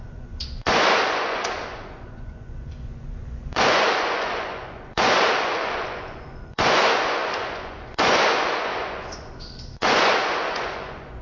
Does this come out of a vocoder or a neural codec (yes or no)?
yes